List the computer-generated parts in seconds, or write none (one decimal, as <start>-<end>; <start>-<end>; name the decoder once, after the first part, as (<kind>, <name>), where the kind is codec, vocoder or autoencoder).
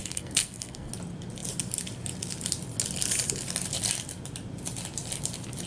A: 0.0-0.9 (codec, SNAC)